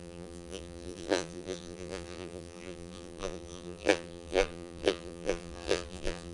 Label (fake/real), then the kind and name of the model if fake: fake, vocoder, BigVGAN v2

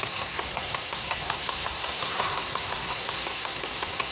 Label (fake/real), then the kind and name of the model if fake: fake, codec, SNAC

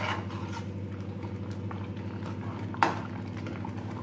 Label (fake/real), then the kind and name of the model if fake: real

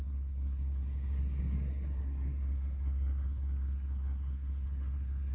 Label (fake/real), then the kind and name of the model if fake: fake, codec, SNAC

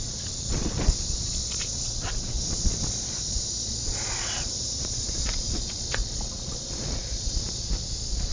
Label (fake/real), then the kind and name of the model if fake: fake, vocoder, Vocos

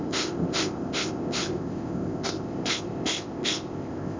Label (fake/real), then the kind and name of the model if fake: fake, codec, ZipCodec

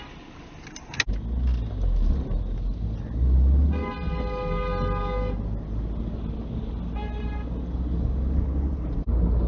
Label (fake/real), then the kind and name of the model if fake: real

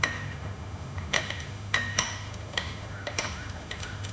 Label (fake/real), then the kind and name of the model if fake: fake, autoencoder, DAC-VAE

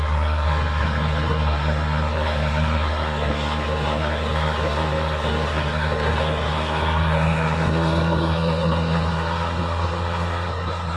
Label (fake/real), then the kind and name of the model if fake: fake, codec, SNAC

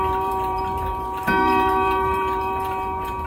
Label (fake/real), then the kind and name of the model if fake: fake, vocoder, BigVGAN v2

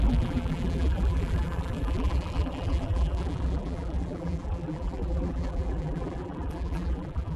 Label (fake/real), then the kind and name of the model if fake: fake, vocoder, BigVGAN v2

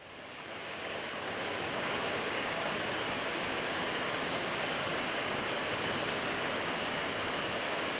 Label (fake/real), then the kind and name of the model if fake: fake, codec, DAC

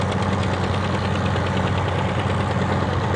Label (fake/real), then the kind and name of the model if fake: real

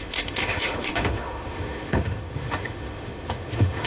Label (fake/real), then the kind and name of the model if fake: fake, autoencoder, DAC-VAE